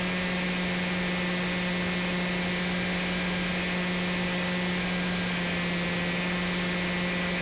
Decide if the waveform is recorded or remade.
recorded